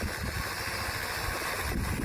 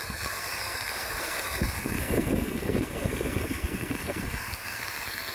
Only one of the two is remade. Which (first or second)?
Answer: second